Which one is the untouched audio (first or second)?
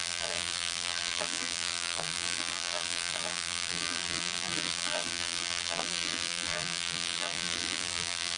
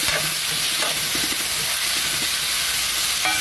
second